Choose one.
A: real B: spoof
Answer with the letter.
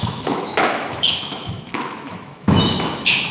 B